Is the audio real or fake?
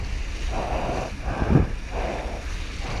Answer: real